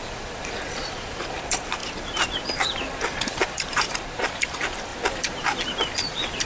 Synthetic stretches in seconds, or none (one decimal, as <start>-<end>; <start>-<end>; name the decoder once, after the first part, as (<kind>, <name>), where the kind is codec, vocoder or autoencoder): 0.0-1.8 (vocoder, BigVGAN v2); 2.8-4.9; 5.7-6.5

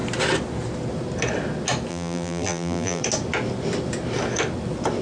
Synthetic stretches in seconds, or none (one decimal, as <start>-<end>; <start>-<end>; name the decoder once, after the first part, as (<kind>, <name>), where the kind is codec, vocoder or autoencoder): 1.9-3.0 (vocoder, BigVGAN v2)

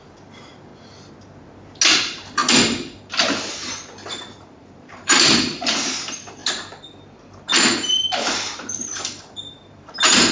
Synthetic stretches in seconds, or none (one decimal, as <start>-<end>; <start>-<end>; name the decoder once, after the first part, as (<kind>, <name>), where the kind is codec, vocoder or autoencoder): 0.0-0.7 (vocoder, BigVGAN v2); 1.9-2.4; 4.3-6.4; 9.5-10.3

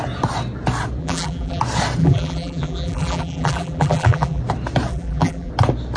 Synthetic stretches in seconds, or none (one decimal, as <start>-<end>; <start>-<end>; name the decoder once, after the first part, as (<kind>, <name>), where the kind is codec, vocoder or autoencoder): 1.0-1.6 (vocoder, BigVGAN v2); 2.0-4.4; 4.9-5.5

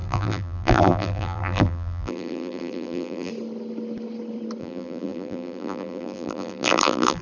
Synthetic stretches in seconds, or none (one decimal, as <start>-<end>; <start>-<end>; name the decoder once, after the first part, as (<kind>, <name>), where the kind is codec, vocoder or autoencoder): 0.0-3.3 (vocoder, BigVGAN v2); 4.6-7.2

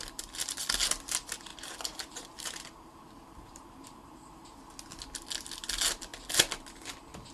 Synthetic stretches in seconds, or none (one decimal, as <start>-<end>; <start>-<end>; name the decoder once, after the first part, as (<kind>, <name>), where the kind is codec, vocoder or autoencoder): 1.5-4.3 (vocoder, BigVGAN v2)

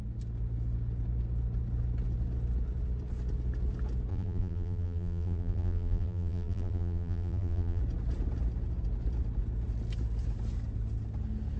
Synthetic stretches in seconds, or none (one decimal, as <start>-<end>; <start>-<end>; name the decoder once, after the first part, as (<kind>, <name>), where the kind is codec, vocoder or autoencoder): 4.1-7.8 (vocoder, BigVGAN v2)